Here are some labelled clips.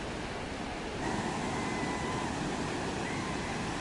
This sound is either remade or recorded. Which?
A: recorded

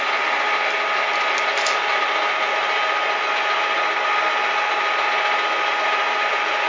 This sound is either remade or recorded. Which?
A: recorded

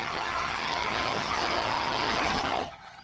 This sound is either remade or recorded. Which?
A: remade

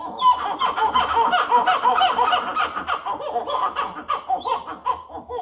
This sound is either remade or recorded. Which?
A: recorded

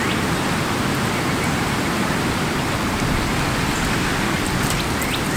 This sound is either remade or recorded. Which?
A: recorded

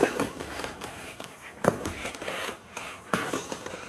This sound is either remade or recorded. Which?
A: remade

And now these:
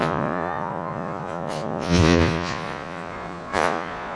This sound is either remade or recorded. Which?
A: remade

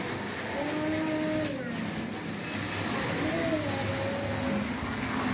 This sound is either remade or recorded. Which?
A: recorded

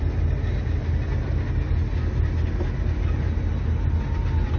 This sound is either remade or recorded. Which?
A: recorded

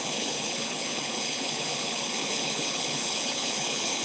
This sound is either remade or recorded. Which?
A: remade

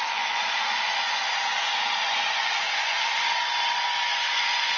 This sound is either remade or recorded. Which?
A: remade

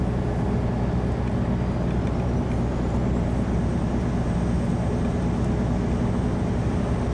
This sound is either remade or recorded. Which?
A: recorded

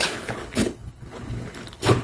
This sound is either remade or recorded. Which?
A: remade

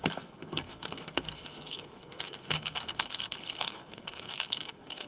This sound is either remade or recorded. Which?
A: remade